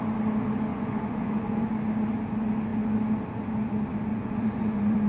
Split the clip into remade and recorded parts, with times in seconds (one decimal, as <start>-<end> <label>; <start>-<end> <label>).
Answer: 0.0-0.7 recorded; 0.7-1.7 remade; 1.7-4.1 recorded; 4.1-5.1 remade